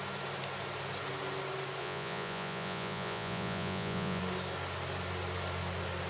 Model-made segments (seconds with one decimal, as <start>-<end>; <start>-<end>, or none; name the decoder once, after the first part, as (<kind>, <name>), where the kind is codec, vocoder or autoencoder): 1.8-4.2 (vocoder, Vocos)